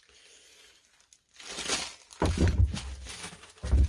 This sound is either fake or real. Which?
real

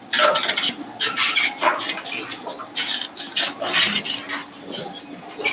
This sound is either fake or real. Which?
real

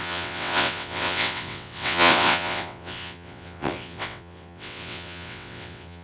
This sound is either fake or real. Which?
fake